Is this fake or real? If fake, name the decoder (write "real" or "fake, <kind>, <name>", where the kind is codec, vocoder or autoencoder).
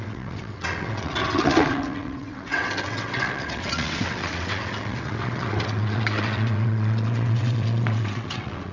fake, vocoder, WaveNeXt